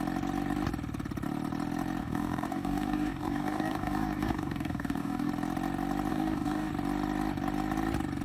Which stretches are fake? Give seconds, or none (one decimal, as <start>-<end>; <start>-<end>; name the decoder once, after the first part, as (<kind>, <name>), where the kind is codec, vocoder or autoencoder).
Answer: 2.0-5.3 (codec, DAC); 6.1-6.7